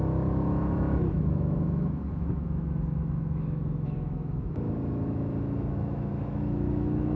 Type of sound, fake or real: fake